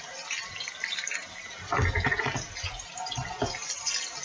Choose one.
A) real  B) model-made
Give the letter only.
A